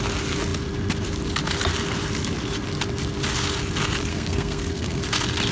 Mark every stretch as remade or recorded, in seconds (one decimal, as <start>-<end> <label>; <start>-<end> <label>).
0.0-4.1 recorded; 4.1-5.0 remade; 5.0-5.5 recorded